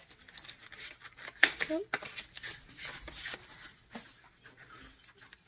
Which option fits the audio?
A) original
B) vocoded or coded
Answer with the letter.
A